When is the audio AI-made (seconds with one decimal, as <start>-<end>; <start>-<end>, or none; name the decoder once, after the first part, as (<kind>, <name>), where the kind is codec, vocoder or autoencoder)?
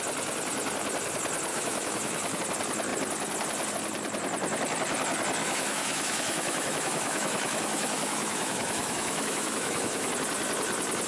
1.5-2.4 (autoencoder, DAC-VAE); 5.4-10.1